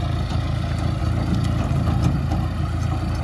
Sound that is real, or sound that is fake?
real